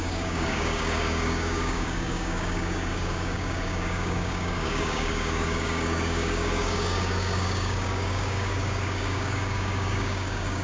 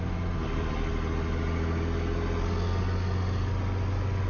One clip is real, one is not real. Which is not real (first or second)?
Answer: first